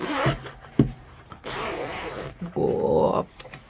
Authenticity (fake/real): fake